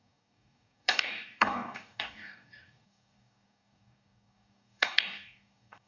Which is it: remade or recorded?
remade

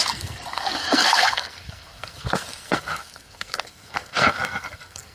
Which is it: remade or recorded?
remade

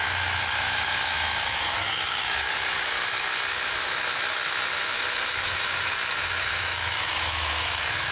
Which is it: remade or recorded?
remade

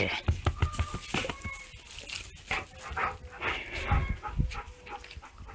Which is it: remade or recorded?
recorded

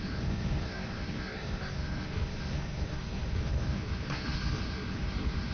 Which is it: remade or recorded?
remade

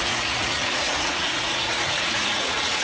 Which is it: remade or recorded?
remade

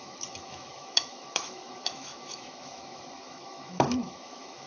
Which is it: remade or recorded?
remade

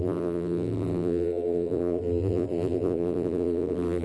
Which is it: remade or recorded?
remade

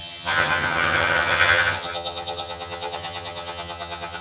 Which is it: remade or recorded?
remade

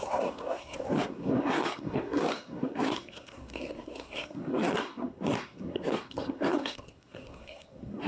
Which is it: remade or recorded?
remade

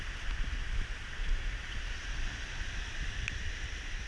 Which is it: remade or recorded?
recorded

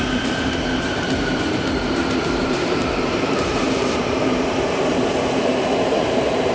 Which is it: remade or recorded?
remade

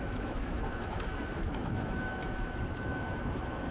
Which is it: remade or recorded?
remade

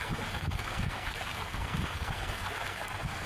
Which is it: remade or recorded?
remade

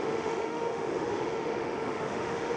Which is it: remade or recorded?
remade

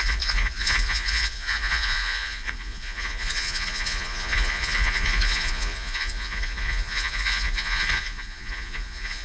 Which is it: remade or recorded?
remade